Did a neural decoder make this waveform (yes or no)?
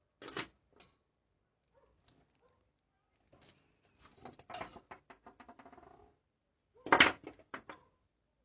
no